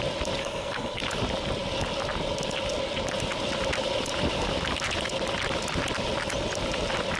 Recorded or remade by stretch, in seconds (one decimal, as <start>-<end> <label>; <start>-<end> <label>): 0.0-0.4 recorded; 0.4-1.0 remade; 1.0-7.2 recorded